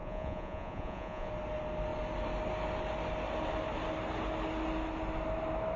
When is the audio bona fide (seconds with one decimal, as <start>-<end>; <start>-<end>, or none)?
1.3-5.8